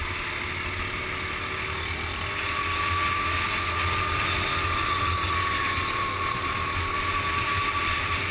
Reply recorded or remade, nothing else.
recorded